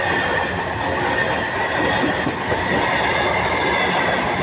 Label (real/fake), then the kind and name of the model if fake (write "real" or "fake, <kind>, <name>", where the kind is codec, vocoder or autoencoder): real